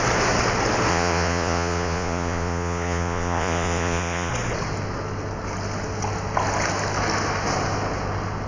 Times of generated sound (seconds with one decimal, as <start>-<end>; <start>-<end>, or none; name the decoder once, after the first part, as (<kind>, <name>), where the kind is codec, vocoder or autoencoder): 0.9-4.3 (vocoder, Vocos)

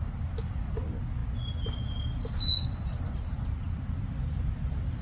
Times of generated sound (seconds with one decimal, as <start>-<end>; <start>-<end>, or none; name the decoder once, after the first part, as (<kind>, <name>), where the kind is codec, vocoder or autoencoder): none

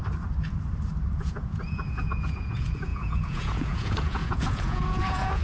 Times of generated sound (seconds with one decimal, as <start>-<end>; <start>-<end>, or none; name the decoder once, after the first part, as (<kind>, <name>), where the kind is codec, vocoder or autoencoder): 1.1-5.4 (vocoder, Vocos)

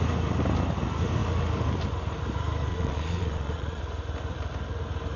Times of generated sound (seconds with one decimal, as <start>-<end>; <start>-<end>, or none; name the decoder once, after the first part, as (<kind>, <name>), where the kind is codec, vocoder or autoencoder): 2.7-3.8 (vocoder, Vocos)

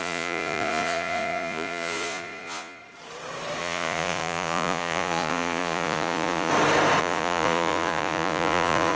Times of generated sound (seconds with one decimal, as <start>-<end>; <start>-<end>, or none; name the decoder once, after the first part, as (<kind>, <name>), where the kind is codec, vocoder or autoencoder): 0.0-2.8 (vocoder, Vocos); 3.6-6.5; 7.0-9.0

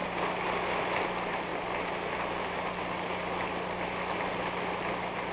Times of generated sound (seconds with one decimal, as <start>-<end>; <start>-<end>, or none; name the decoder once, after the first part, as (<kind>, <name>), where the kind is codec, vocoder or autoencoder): none

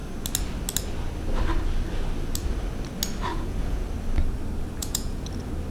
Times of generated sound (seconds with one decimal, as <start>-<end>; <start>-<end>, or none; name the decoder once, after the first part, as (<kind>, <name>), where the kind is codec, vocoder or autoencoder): 3.3-3.8 (vocoder, Vocos); 4.8-5.3

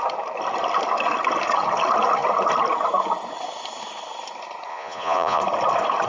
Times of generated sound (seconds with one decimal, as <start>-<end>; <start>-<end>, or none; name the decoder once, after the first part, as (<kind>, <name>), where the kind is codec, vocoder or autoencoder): 4.7-5.4 (vocoder, Vocos)